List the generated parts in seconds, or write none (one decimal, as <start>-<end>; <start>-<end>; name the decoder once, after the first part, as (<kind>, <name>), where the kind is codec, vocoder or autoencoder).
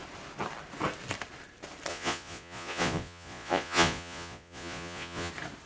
1.9-5.3 (vocoder, Vocos)